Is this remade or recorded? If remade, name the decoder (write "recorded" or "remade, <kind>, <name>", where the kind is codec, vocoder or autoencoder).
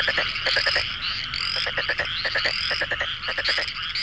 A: recorded